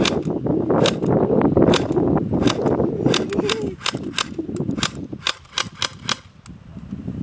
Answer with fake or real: real